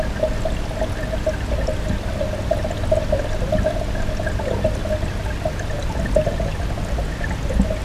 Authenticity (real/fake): real